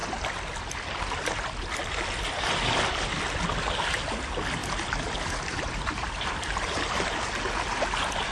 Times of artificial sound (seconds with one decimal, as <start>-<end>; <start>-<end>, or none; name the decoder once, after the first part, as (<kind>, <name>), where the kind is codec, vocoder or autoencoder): 0.0-3.1 (vocoder, BigVGAN v2); 4.6-7.4